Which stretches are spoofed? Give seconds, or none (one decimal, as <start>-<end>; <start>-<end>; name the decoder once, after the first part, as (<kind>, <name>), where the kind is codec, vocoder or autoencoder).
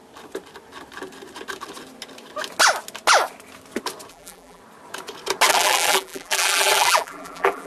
4.1-4.6 (vocoder, BigVGAN v2); 5.5-7.7